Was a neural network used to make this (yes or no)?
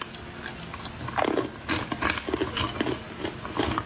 no